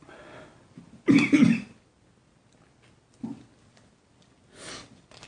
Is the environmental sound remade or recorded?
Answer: recorded